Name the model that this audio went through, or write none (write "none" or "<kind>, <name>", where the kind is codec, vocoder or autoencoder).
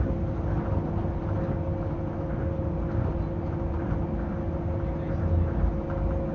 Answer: none